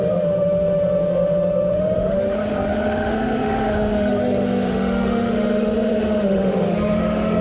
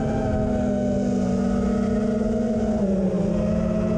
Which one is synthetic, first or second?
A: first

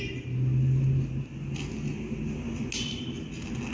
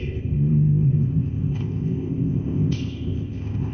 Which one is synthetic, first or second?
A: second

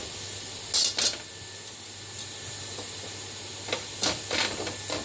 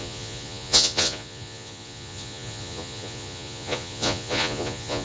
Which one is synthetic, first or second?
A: second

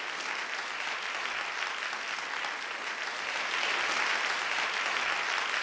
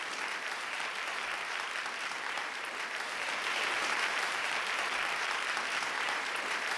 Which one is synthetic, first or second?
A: second